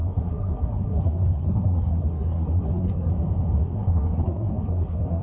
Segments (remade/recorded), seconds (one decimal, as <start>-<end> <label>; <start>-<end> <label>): 0.0-3.1 remade; 3.1-3.6 recorded; 3.6-5.2 remade